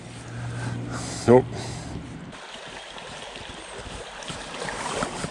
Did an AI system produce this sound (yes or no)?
no